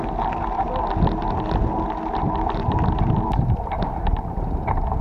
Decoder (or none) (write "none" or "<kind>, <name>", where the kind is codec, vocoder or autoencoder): none